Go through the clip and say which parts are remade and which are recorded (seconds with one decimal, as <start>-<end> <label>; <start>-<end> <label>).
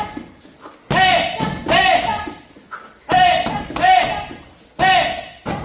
0.0-5.6 recorded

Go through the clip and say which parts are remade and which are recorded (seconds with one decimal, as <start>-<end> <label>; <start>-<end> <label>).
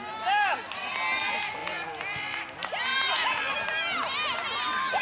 0.0-5.0 recorded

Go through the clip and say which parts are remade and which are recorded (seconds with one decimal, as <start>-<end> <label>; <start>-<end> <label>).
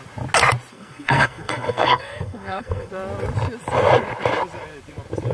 0.0-0.7 recorded; 0.7-2.9 remade; 2.9-5.3 recorded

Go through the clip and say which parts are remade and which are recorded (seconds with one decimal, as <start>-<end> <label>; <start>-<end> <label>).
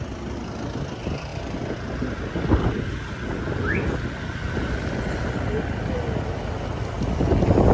0.0-7.7 recorded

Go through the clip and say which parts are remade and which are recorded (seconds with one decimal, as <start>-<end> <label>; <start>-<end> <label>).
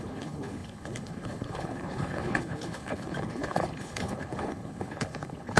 0.0-5.6 remade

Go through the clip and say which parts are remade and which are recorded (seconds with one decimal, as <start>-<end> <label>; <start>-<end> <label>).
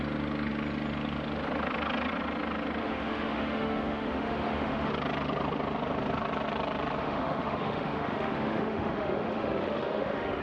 0.0-2.8 recorded; 2.8-4.9 remade; 4.9-7.0 recorded; 7.0-10.4 remade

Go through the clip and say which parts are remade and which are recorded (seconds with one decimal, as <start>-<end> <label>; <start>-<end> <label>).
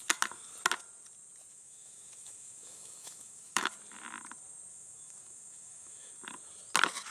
0.0-1.5 recorded; 1.5-3.7 remade; 3.7-4.7 recorded; 4.7-6.1 remade; 6.1-7.1 recorded